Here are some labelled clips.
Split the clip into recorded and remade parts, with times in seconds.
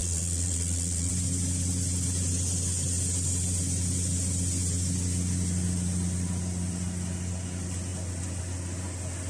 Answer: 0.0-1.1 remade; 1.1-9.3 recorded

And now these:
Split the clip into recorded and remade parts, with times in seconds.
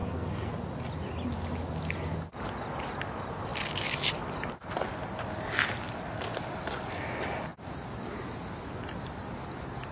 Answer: 0.0-0.5 remade; 0.5-9.9 recorded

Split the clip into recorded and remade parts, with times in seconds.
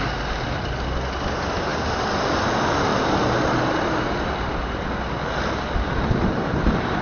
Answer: 0.0-7.0 recorded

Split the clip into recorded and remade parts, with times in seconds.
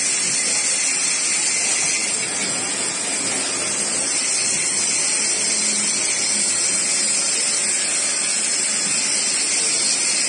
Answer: 0.0-10.3 recorded